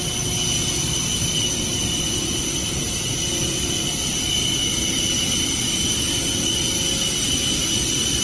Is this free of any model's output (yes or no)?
yes